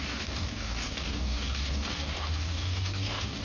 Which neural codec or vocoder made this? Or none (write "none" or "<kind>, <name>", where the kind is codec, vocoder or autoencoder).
codec, DAC